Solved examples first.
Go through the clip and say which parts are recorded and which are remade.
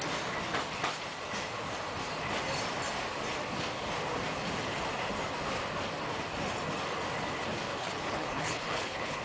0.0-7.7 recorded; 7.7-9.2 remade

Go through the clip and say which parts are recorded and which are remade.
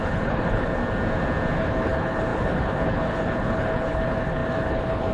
0.0-0.8 remade; 0.8-1.6 recorded; 1.6-5.1 remade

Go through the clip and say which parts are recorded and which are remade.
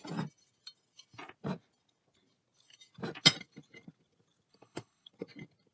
0.0-4.5 recorded; 4.5-5.1 remade; 5.1-5.7 recorded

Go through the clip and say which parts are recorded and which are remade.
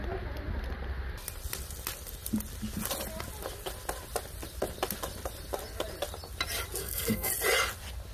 0.0-6.8 recorded; 6.8-7.3 remade; 7.3-8.1 recorded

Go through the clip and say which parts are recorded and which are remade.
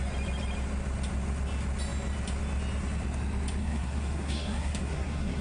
0.0-3.6 recorded; 3.6-5.4 remade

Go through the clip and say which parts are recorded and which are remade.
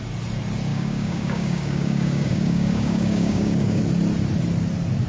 0.0-0.7 recorded; 0.7-3.8 remade; 3.8-5.1 recorded